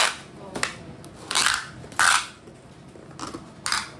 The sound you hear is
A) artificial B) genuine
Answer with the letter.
B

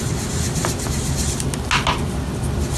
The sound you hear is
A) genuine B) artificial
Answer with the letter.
A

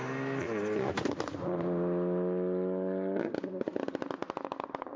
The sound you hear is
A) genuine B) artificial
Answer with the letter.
A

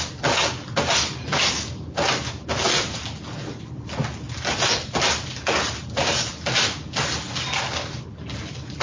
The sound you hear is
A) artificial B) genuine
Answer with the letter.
B